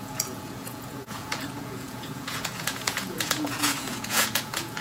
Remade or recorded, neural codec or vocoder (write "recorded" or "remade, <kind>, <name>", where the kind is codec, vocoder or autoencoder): remade, vocoder, Vocos